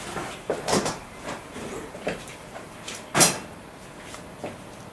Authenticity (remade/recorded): remade